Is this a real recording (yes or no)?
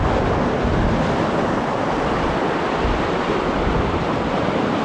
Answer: yes